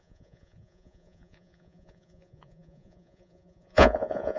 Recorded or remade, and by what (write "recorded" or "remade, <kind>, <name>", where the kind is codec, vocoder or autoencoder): remade, vocoder, Vocos